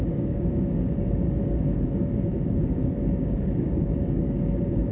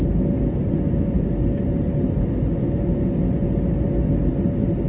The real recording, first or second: second